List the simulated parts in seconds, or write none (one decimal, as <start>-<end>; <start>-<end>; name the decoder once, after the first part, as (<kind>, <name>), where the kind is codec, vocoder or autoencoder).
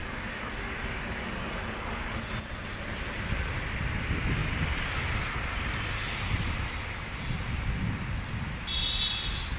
0.0-2.2 (codec, DAC)